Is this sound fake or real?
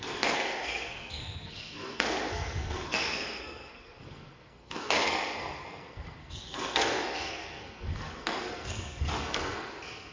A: fake